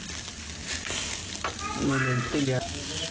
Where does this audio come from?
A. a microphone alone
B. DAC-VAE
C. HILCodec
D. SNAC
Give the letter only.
A